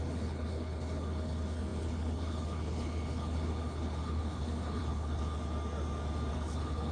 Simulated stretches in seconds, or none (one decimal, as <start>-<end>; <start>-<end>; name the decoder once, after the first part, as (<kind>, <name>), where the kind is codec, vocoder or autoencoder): 0.0-5.4 (codec, HILCodec); 6.3-6.9